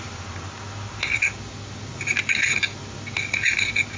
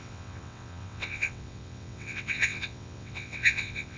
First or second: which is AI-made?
second